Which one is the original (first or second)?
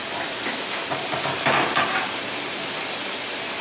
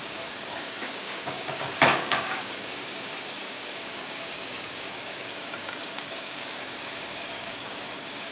first